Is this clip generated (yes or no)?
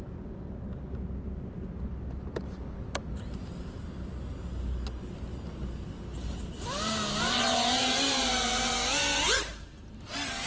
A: no